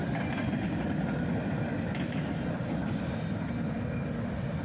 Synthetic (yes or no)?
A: no